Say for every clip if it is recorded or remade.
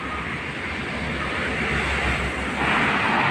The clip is recorded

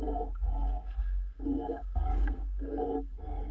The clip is remade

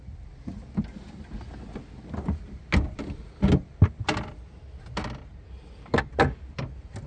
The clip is recorded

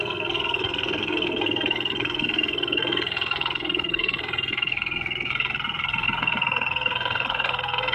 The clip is remade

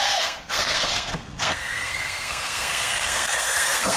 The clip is remade